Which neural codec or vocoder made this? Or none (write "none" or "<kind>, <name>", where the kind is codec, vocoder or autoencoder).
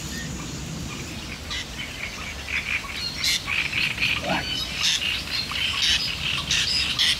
none